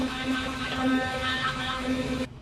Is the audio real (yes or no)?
no